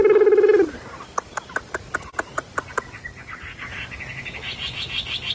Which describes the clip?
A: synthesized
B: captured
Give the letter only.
B